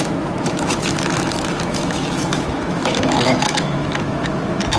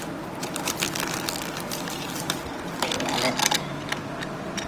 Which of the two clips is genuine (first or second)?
second